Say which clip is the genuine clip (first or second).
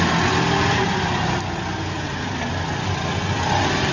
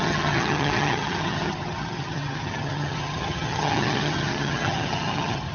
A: first